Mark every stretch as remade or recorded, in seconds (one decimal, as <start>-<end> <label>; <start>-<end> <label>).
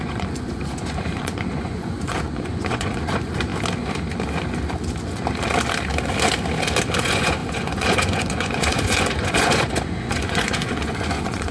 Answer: 0.0-3.5 remade; 3.5-7.0 recorded; 7.0-11.5 remade